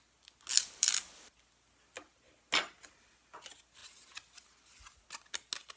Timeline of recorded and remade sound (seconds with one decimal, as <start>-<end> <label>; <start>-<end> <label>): 0.0-5.8 recorded